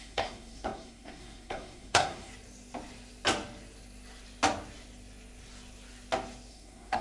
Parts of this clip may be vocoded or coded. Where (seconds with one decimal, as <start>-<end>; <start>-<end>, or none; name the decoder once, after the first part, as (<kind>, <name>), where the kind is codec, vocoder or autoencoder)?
0.0-2.3 (codec, SNAC); 6.5-7.0